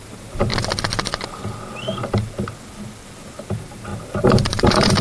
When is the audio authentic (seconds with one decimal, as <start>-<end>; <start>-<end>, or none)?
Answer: 0.5-3.5